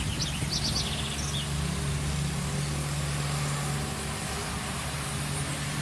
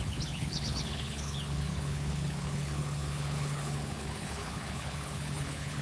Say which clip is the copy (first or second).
second